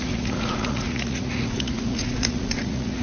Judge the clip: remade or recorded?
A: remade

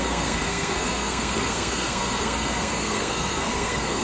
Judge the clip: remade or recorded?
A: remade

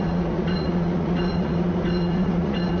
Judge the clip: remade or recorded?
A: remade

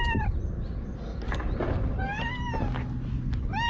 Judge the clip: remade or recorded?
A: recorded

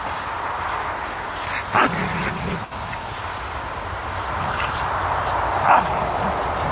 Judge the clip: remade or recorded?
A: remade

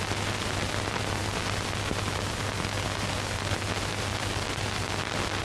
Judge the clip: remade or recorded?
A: recorded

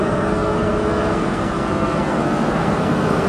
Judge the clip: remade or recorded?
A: remade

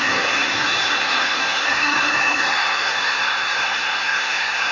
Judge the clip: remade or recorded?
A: remade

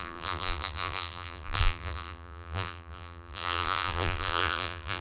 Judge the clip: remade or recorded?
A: remade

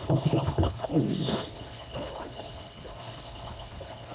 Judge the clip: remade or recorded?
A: remade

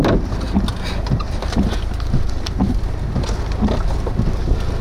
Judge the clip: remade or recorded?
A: recorded